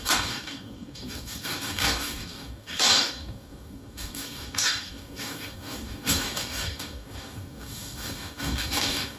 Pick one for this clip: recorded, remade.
remade